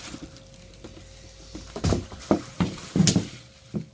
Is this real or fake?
real